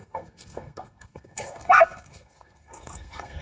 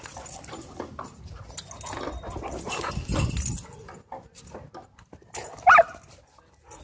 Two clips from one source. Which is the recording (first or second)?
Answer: second